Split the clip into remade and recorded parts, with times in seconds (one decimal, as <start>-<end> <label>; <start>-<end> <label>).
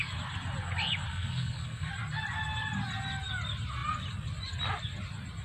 0.0-1.1 recorded; 1.1-1.9 remade; 1.9-5.4 recorded